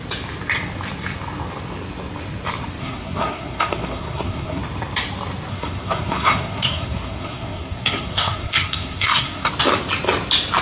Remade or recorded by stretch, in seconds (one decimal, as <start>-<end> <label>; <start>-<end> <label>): 0.0-2.8 recorded; 2.8-4.6 remade; 4.6-5.5 recorded; 5.5-9.5 remade; 9.5-10.6 recorded